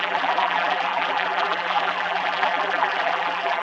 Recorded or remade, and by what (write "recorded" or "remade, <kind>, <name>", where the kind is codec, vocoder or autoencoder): remade, vocoder, BigVGAN v2